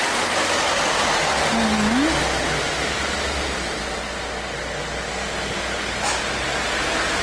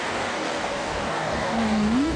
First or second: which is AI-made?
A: second